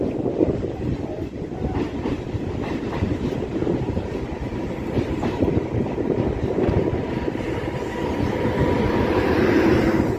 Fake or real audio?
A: fake